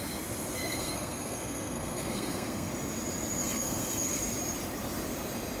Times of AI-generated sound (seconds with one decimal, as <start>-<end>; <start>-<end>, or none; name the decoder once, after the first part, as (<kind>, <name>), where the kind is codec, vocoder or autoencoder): 0.6-2.7 (codec, SNAC); 3.4-4.2